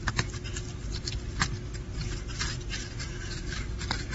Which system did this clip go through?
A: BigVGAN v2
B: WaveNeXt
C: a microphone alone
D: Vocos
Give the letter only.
C